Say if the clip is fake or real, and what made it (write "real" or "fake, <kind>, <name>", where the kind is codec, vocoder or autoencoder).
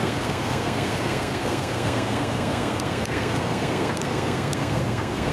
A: fake, codec, SNAC